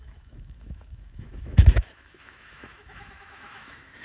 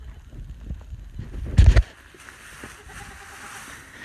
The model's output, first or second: first